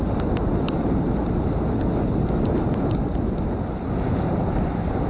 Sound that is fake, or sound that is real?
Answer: real